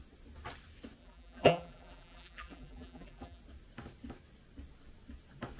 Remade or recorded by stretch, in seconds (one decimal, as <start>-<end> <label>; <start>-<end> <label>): 0.0-1.0 recorded; 1.0-3.4 remade; 3.4-5.6 recorded